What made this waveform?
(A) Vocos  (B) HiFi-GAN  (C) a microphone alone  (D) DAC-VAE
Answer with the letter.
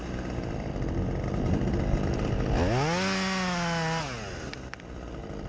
C